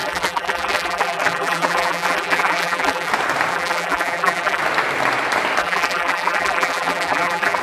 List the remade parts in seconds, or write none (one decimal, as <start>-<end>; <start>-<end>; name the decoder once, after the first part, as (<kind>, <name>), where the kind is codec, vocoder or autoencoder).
0.0-3.1 (vocoder, BigVGAN v2); 3.5-4.6; 5.6-7.6